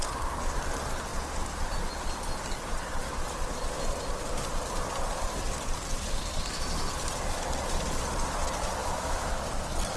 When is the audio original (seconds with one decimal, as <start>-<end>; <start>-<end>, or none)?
0.0-8.8; 9.3-10.0